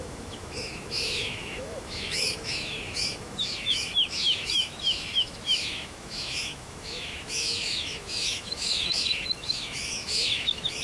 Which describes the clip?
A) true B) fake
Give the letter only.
B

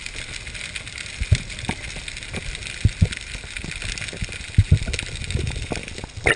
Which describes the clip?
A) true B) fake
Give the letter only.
A